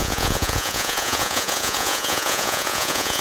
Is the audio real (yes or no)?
no